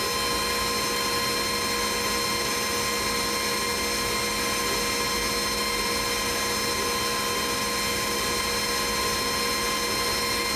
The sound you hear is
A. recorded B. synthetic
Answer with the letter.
A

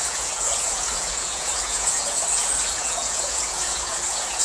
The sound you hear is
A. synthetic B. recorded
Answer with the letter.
A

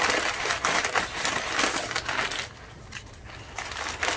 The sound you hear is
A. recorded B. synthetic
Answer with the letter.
A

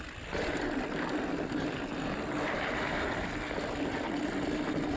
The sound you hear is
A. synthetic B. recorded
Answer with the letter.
B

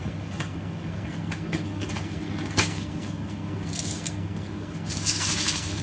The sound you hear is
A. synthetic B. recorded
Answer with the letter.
A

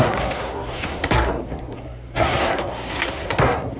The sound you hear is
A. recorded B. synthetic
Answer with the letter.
B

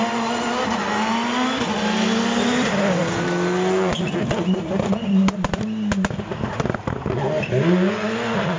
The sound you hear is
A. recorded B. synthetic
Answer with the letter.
A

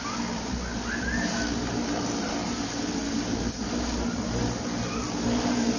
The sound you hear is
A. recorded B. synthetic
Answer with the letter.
A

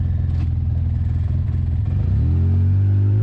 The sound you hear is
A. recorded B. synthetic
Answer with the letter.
A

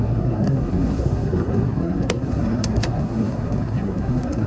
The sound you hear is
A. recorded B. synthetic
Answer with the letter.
B